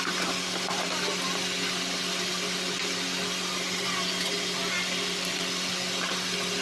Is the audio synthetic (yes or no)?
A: no